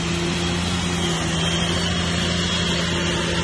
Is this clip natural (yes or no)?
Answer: yes